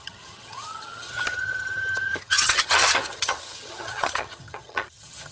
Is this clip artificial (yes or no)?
yes